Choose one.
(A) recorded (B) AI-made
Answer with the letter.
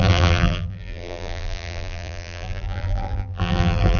B